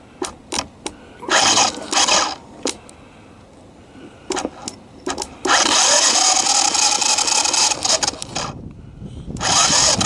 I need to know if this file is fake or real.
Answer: real